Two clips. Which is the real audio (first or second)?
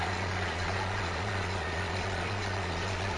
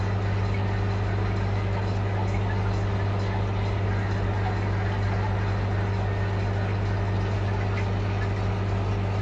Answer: second